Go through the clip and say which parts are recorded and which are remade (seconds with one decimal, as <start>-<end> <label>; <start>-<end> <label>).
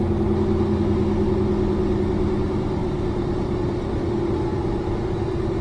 0.0-5.6 recorded